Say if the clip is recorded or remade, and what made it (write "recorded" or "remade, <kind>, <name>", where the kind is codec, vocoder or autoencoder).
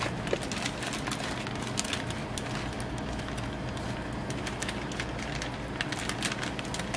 recorded